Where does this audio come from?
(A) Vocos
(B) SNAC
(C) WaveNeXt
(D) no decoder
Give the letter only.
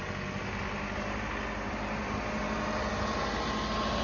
D